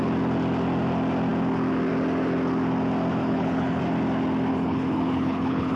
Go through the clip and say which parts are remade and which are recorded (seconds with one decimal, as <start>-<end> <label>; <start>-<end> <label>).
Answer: 0.0-3.2 recorded; 3.2-3.8 remade; 3.8-4.5 recorded; 4.5-5.8 remade